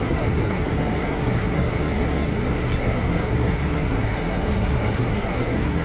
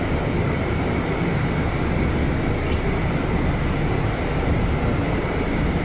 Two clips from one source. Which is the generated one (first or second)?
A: first